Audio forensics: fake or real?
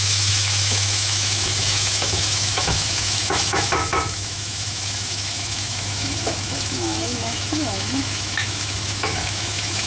fake